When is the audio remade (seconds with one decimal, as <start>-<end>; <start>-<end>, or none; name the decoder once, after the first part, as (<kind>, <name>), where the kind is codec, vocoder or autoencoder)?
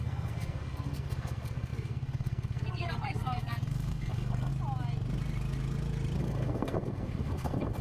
0.0-4.5 (codec, SNAC); 6.2-7.8